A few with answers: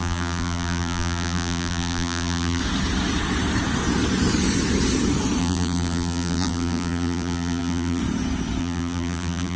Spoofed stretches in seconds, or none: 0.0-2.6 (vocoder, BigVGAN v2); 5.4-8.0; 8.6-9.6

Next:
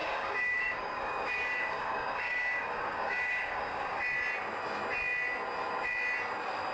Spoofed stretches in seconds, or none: 0.0-4.0 (codec, DAC)

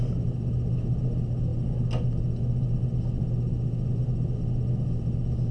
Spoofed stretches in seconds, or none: none